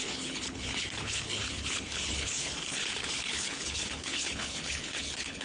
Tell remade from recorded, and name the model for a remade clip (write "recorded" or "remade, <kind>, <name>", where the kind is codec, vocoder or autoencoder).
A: remade, codec, HILCodec